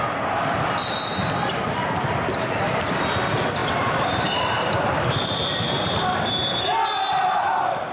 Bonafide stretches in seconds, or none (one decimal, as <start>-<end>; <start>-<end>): 0.0-3.6